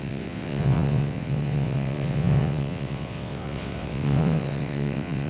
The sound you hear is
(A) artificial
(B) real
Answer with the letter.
A